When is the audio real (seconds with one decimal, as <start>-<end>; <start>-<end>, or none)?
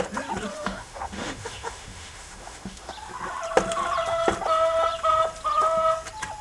0.0-0.5; 2.9-6.4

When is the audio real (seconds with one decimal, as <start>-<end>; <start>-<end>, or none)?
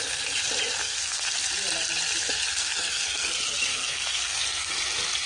0.0-0.8; 1.5-2.5; 3.3-3.7; 4.7-5.3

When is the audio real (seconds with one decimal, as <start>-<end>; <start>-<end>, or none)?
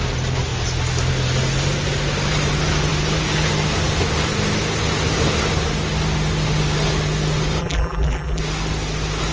0.0-7.6; 8.4-9.3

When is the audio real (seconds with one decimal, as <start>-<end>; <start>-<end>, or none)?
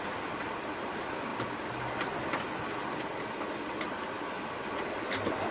0.0-5.5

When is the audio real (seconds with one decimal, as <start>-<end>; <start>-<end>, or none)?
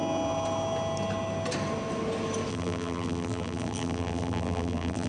0.0-2.5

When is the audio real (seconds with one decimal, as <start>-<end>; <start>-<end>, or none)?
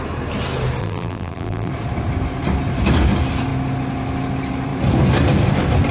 0.0-0.8; 1.7-5.9